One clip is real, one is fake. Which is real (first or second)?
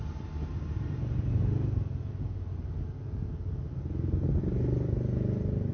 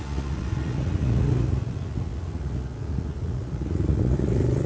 first